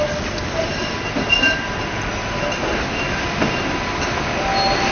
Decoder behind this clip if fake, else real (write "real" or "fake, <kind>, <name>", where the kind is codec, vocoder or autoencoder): real